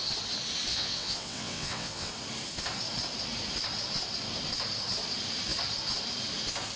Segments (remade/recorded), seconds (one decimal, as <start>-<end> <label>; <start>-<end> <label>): 0.0-0.7 recorded; 0.7-2.1 remade; 2.1-6.8 recorded

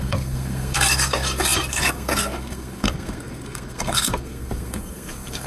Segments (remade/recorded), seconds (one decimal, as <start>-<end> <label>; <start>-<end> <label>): 0.0-5.5 remade

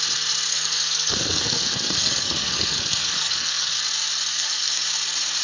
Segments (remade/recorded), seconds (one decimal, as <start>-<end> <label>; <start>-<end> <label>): 0.0-0.5 recorded; 0.5-3.7 remade; 3.7-4.3 recorded; 4.3-4.8 remade; 4.8-5.4 recorded

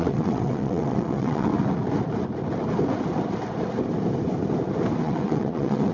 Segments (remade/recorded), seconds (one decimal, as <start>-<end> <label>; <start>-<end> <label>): 0.0-1.5 remade; 1.5-5.0 recorded; 5.0-5.9 remade

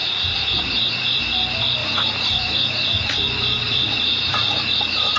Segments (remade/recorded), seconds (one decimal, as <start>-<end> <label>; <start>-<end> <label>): 0.0-1.2 remade; 1.2-1.8 recorded; 1.8-5.2 remade